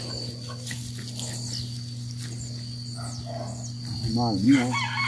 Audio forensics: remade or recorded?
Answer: recorded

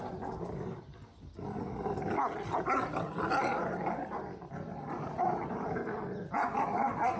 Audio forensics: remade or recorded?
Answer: recorded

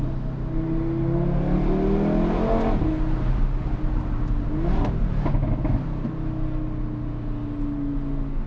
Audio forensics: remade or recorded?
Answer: recorded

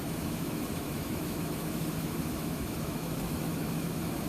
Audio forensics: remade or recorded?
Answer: remade